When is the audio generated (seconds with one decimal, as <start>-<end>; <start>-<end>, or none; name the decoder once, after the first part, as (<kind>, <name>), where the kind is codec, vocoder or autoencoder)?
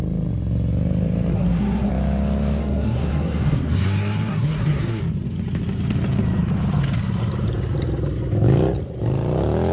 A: 1.3-1.9 (codec, SNAC); 2.6-5.0